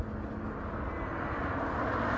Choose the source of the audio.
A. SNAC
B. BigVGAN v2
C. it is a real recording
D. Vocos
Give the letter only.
C